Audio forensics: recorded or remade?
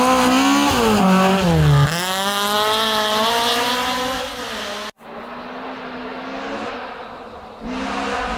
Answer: recorded